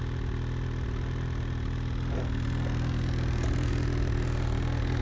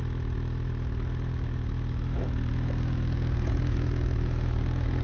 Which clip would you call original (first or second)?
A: first